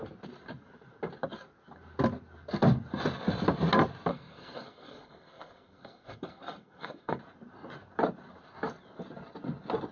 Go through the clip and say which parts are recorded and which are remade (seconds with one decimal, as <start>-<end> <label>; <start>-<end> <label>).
0.0-4.1 recorded; 4.1-7.2 remade; 7.2-9.9 recorded